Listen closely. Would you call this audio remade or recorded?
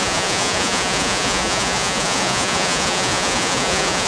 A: remade